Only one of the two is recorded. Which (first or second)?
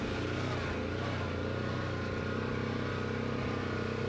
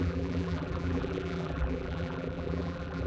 first